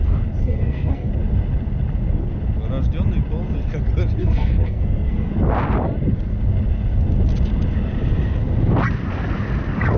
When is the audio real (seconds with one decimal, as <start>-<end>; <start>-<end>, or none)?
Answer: 0.0-0.4; 1.1-4.2; 5.3-10.0